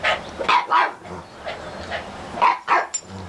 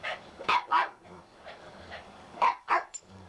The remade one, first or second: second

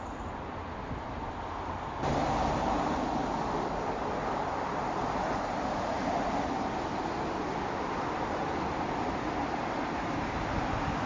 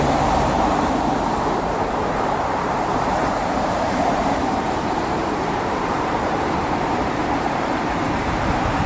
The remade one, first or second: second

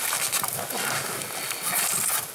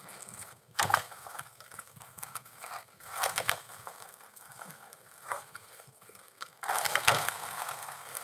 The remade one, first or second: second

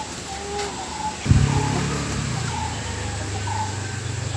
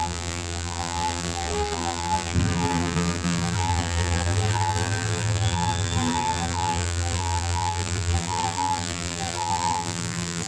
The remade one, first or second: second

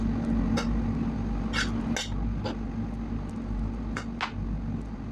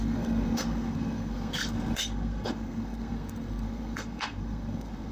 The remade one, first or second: second